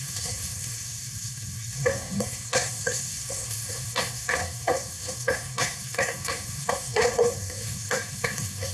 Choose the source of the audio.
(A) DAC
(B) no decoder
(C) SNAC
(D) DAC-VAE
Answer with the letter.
C